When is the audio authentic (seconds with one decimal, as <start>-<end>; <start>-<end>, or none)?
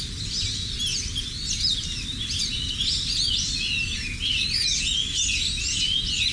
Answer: 0.0-6.3